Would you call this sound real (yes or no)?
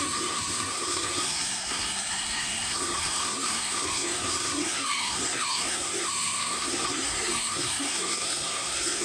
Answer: no